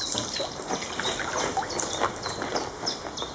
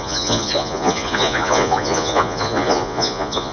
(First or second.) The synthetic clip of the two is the second